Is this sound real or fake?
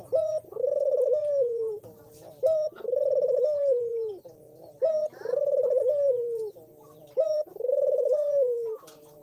fake